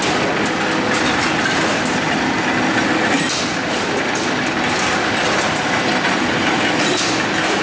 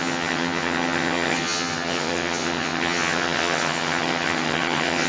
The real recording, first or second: first